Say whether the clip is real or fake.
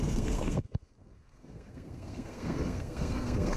fake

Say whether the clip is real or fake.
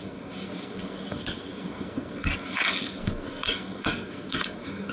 fake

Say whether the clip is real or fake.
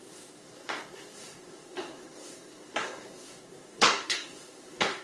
fake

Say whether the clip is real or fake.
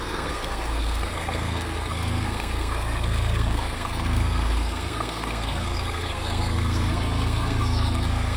fake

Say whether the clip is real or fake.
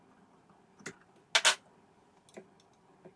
real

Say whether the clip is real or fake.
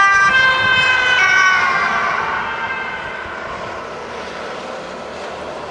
real